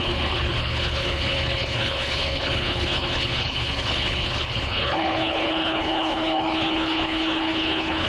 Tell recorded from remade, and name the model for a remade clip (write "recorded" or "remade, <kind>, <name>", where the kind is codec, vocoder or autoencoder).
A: remade, codec, HILCodec